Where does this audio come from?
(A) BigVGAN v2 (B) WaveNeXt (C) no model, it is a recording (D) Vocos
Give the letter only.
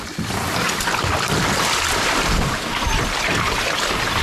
C